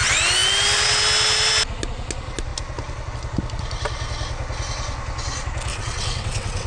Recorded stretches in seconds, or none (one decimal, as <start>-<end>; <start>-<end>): 0.0-5.7